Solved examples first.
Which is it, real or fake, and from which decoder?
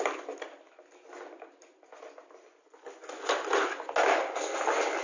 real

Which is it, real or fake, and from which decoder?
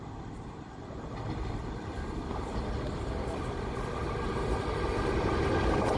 real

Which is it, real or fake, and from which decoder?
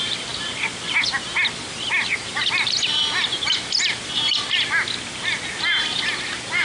real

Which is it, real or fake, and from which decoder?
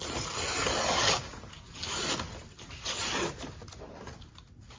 real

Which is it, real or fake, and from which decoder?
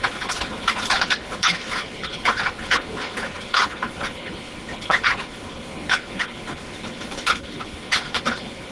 fake, codec, HILCodec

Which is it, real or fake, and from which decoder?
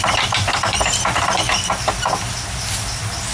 real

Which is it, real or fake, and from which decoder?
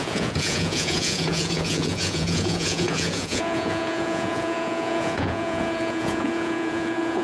fake, vocoder, Vocos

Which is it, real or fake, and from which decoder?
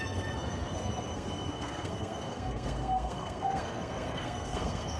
fake, codec, SNAC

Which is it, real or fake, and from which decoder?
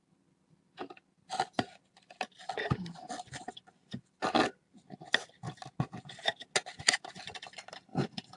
real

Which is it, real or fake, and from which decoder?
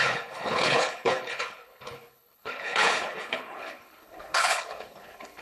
fake, codec, HILCodec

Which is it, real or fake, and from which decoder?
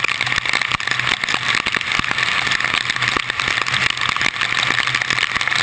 real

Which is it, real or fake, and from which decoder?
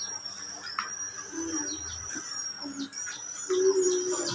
real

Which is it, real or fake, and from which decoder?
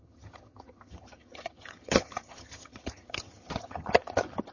fake, vocoder, HiFi-GAN